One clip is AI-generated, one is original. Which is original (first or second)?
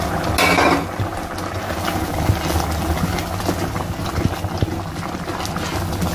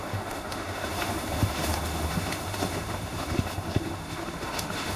first